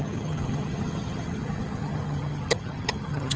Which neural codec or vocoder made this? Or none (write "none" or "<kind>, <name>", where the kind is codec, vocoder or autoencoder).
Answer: vocoder, HiFi-GAN